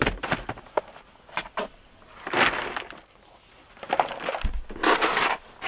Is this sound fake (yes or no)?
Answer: no